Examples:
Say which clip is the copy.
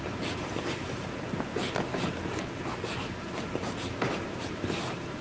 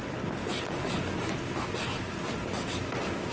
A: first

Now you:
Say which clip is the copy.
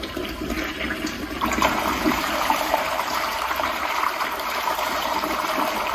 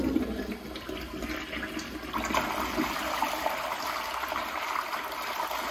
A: first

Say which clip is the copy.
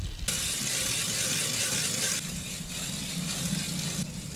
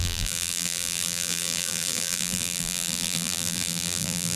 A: second